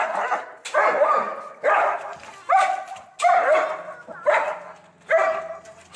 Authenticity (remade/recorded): recorded